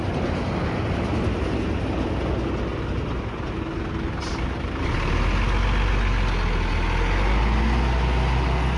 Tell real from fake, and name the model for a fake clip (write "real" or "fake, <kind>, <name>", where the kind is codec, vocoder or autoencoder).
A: real